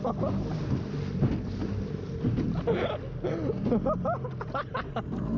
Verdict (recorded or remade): recorded